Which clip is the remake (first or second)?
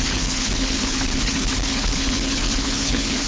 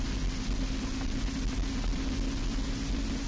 first